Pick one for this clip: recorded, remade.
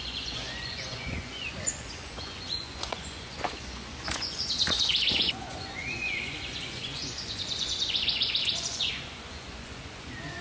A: remade